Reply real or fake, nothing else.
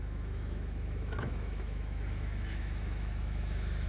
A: fake